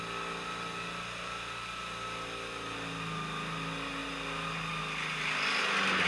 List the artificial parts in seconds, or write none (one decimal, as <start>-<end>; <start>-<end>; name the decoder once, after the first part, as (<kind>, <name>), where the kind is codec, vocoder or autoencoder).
none

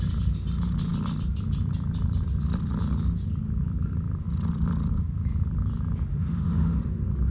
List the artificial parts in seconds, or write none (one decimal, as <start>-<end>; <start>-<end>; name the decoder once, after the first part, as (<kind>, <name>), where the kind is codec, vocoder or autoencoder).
6.1-6.8 (autoencoder, DAC-VAE)

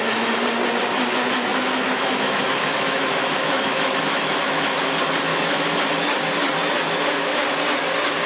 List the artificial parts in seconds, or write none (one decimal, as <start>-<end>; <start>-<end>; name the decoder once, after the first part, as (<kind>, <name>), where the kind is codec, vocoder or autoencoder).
1.5-4.8 (autoencoder, DAC-VAE); 5.3-5.8